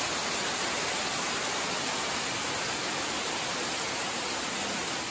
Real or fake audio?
real